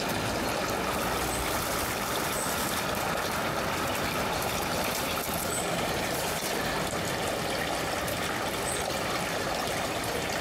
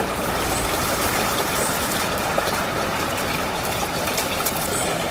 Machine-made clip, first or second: second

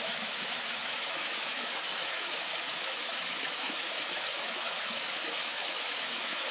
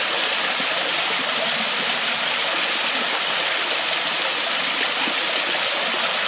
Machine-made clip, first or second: first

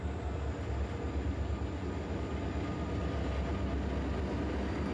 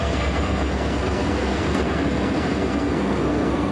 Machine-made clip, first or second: second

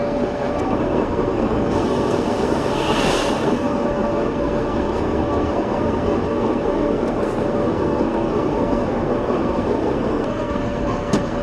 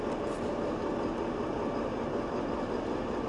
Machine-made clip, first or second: first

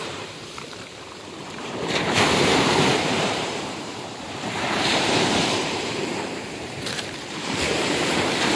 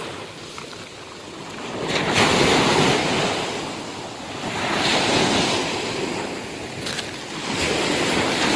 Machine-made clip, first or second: first